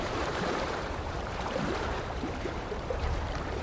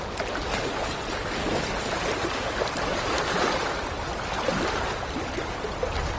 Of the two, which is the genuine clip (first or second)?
second